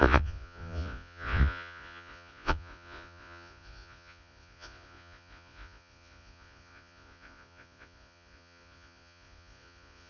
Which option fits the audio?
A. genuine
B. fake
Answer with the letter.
B